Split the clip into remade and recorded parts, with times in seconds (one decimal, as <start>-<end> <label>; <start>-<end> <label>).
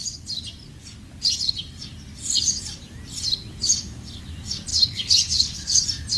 0.0-4.7 recorded; 4.7-5.8 remade; 5.8-6.2 recorded